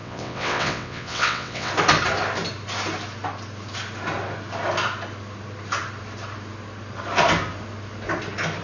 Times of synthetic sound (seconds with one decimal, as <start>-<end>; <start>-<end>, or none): 0.0-1.7